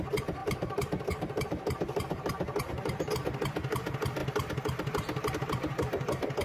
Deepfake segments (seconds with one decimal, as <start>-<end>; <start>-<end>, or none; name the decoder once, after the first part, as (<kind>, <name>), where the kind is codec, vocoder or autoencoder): 0.4-3.1 (vocoder, BigVGAN v2)